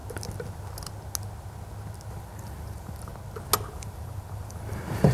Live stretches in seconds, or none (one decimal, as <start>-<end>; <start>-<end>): 0.0-2.1; 3.1-3.7